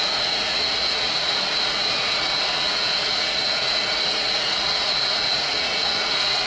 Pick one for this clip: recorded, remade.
remade